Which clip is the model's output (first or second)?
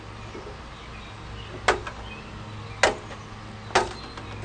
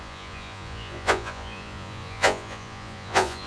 second